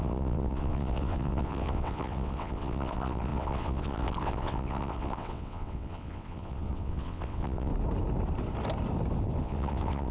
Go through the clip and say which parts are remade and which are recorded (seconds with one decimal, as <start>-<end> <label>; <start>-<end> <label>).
0.0-7.7 remade; 7.7-9.4 recorded; 9.4-10.1 remade